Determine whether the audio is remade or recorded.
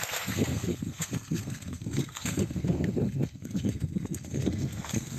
remade